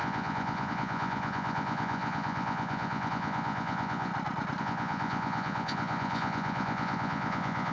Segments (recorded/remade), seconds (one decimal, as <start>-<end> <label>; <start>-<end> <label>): 0.0-4.1 remade; 4.1-4.6 recorded; 4.6-7.7 remade

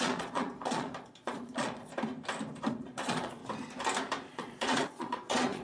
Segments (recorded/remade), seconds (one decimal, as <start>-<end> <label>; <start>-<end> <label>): 0.0-1.9 remade; 1.9-2.7 recorded; 2.7-3.4 remade; 3.4-4.3 recorded; 4.3-5.6 remade

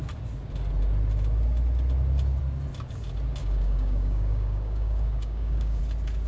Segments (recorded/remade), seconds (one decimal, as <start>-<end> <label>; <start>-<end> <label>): 0.0-3.4 recorded; 3.4-5.8 remade; 5.8-6.3 recorded

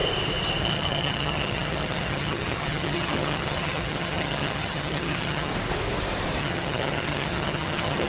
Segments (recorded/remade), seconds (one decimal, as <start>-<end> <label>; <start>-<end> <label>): 0.0-0.6 recorded; 0.6-5.5 remade; 5.5-6.4 recorded; 6.4-8.1 remade

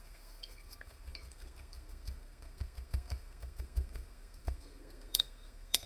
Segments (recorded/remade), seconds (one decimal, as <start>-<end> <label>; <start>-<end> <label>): 0.0-5.9 remade

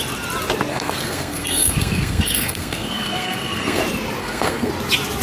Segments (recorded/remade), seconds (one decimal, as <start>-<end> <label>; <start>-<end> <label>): 0.0-0.7 recorded; 0.7-3.8 remade; 3.8-4.2 recorded; 4.2-4.7 remade; 4.7-5.2 recorded